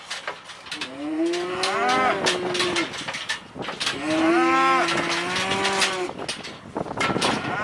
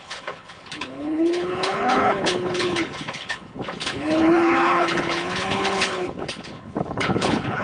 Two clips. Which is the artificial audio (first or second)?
second